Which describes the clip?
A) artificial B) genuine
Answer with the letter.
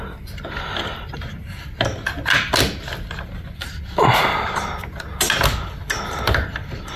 B